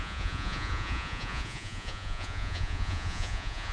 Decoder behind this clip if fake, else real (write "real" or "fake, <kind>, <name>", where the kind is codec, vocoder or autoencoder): fake, vocoder, Vocos